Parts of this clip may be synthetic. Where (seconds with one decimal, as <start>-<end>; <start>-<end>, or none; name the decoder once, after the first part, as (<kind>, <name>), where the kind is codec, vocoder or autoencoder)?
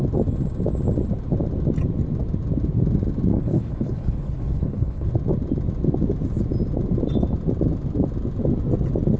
3.3-5.1 (codec, HILCodec)